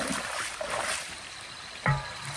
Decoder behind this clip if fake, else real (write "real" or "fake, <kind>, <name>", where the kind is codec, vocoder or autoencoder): real